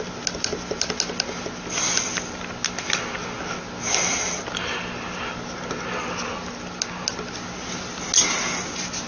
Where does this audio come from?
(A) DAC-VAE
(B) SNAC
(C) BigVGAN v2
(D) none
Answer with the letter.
D